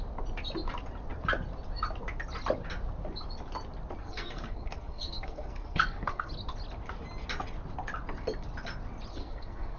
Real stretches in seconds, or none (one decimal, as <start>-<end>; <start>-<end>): 0.0-4.0; 6.3-9.1